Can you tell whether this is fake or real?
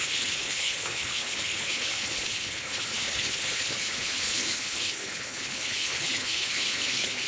fake